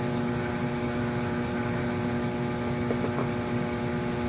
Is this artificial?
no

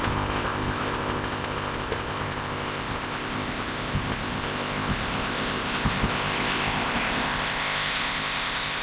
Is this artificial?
yes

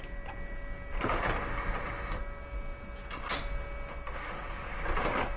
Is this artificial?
no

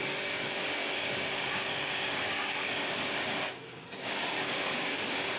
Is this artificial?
yes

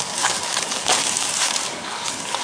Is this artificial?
yes